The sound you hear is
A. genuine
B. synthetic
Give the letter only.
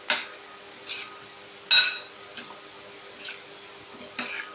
A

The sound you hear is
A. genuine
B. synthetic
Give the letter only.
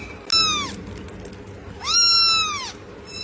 A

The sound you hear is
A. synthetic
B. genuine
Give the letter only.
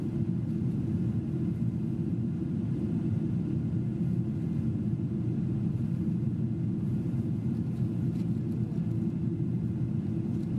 B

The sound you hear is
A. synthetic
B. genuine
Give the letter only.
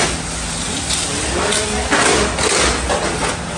B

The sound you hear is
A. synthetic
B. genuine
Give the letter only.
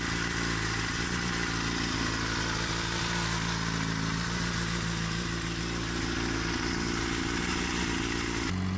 B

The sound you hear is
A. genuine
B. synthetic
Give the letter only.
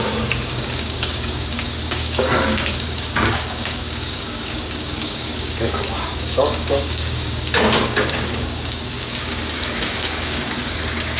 B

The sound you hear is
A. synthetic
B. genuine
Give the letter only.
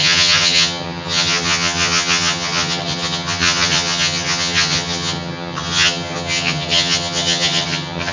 A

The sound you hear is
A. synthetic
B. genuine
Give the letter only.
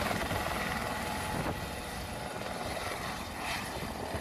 B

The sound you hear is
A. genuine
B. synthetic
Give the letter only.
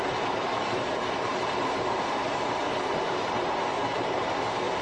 B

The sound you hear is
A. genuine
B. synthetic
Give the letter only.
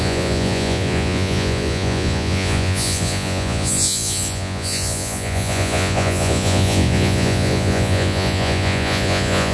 B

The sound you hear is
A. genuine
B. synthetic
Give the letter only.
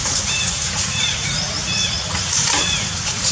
B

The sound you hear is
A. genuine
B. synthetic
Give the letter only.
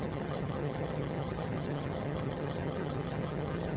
B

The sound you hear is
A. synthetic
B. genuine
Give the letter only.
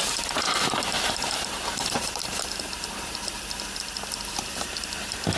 B